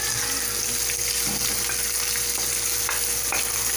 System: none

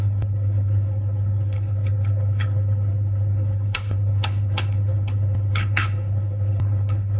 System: codec, HILCodec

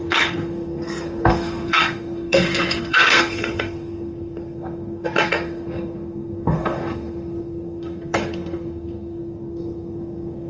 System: codec, SNAC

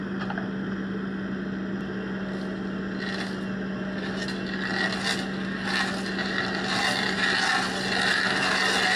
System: none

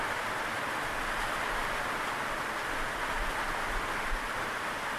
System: none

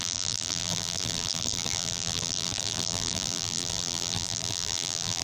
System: vocoder, BigVGAN v2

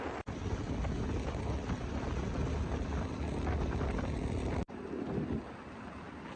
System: none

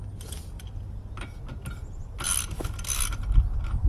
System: none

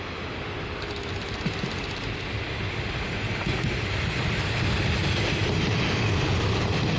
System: none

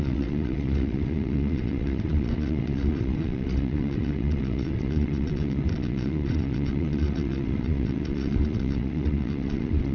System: vocoder, WaveNeXt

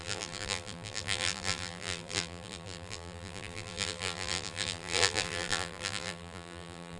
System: vocoder, BigVGAN v2